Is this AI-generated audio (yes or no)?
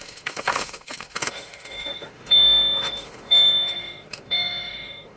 yes